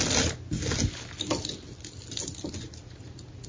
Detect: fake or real real